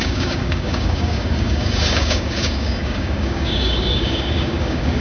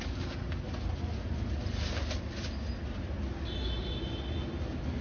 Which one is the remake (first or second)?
first